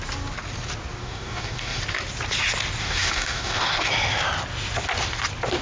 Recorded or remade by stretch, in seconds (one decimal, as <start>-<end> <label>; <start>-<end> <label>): 0.0-1.0 recorded; 1.0-1.8 remade; 1.8-2.8 recorded; 2.8-3.9 remade; 3.9-5.6 recorded